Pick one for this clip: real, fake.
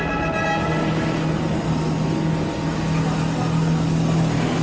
real